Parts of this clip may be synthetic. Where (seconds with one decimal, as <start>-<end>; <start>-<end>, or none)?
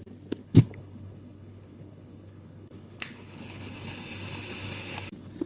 0.4-3.7